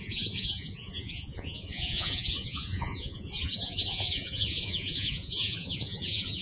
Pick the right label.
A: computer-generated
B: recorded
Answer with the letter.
A